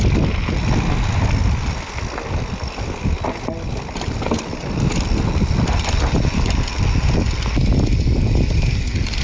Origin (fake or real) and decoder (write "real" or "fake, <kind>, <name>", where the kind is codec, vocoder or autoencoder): real